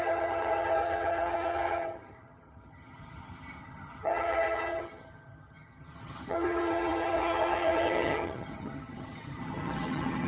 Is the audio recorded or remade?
remade